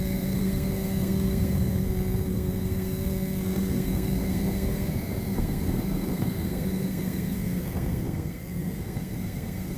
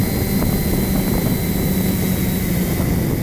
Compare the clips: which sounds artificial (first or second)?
first